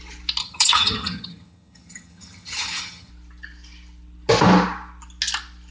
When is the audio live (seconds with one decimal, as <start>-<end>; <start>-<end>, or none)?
0.0-0.4; 3.1-5.7